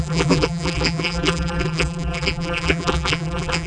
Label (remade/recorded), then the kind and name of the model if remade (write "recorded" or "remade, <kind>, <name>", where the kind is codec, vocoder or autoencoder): remade, vocoder, BigVGAN v2